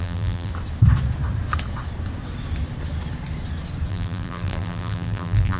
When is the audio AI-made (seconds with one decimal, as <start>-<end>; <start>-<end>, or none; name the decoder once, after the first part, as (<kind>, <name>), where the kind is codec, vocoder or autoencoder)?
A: 0.0-0.5 (vocoder, BigVGAN v2); 3.9-5.6